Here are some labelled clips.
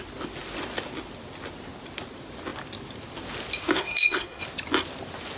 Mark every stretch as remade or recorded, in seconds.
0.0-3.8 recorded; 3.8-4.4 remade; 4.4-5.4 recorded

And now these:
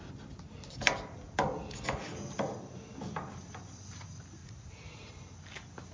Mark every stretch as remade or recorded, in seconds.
0.0-4.4 recorded; 4.4-5.1 remade; 5.1-5.9 recorded

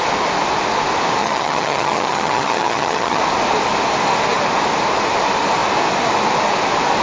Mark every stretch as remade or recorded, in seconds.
0.0-1.2 recorded; 1.2-3.2 remade; 3.2-7.0 recorded

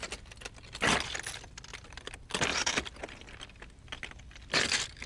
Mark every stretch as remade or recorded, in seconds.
0.0-5.1 recorded

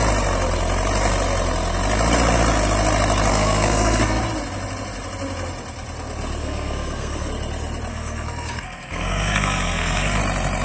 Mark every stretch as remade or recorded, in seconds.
0.0-3.3 recorded; 3.3-4.2 remade; 4.2-6.4 recorded; 6.4-7.3 remade; 7.3-7.9 recorded; 7.9-10.2 remade; 10.2-10.6 recorded